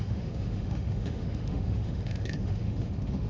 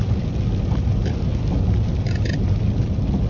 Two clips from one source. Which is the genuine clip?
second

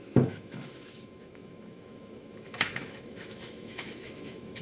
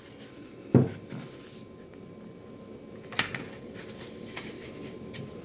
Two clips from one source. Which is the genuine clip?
second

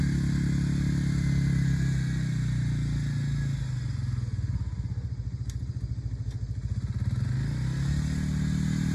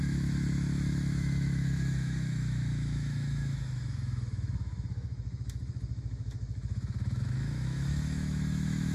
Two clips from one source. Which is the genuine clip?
first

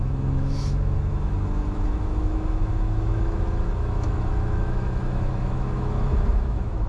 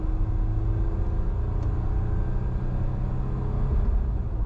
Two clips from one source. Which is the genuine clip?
second